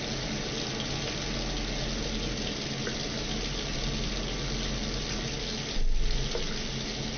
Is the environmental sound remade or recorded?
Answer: recorded